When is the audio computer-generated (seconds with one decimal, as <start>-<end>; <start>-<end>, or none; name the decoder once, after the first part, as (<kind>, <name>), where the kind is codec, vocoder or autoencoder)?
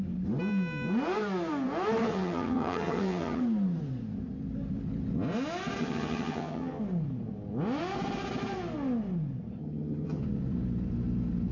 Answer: 2.1-3.4 (vocoder, HiFi-GAN); 5.8-6.8; 9.6-10.2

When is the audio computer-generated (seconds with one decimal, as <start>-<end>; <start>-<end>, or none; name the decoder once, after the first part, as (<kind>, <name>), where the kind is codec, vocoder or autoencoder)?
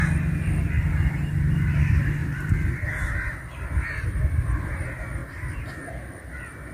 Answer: 2.2-4.7 (vocoder, BigVGAN v2); 5.2-5.9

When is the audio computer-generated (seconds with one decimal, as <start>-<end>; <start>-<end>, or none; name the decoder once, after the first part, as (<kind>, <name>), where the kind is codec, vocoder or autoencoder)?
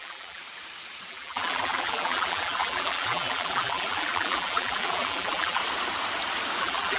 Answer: 0.0-0.4 (vocoder, BigVGAN v2); 1.1-5.6; 6.6-7.0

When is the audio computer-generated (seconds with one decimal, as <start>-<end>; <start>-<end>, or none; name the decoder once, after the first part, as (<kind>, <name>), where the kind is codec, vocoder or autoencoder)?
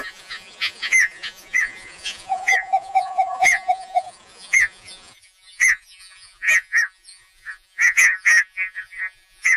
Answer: 0.0-9.6 (vocoder, Vocos)